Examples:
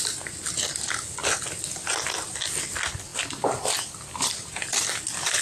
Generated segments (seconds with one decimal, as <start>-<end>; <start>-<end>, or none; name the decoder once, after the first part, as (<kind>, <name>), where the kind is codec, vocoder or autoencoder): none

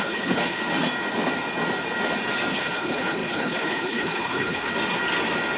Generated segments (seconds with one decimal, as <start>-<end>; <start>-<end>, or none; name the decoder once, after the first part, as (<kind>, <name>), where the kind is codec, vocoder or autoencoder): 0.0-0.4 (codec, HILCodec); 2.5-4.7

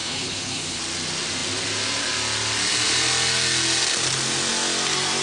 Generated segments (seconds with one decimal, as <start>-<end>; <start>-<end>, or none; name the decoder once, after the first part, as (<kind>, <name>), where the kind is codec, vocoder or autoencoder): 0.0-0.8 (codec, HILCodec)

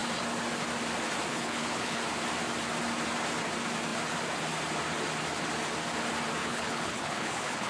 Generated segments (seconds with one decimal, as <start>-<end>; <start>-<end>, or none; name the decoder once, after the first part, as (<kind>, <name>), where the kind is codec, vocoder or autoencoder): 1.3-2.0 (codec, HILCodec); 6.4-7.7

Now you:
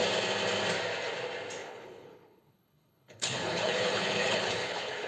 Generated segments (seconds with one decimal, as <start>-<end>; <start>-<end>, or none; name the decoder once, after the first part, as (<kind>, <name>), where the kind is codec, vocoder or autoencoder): 1.6-5.1 (codec, HILCodec)